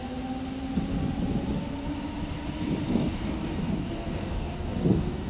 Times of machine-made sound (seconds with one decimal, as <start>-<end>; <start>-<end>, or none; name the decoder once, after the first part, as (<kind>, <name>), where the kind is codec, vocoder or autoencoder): 2.9-5.3 (codec, DAC)